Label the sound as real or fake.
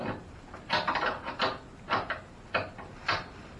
real